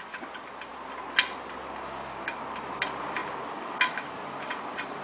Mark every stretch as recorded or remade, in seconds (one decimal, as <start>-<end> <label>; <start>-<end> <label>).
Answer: 0.0-0.7 remade; 0.7-2.7 recorded; 2.7-3.2 remade; 3.2-3.9 recorded; 3.9-5.0 remade